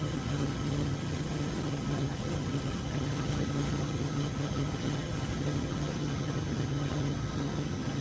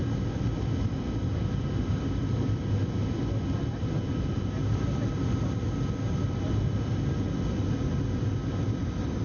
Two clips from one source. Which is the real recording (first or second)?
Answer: second